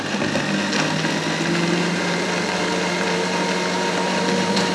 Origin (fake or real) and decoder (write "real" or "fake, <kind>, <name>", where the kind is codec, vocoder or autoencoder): real